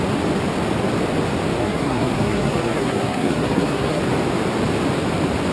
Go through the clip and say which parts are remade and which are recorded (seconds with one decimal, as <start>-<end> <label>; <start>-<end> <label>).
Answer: 0.0-1.6 recorded; 1.6-4.0 remade; 4.0-5.5 recorded